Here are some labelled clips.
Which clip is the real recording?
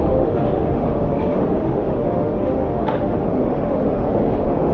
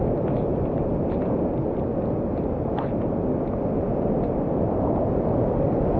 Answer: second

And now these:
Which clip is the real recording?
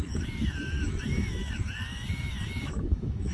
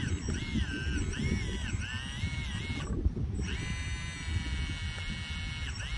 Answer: second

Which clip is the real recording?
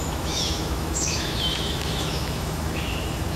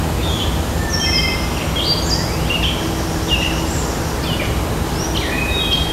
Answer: second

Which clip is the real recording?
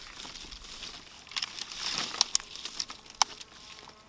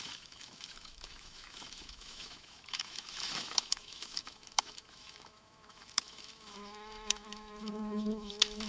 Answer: first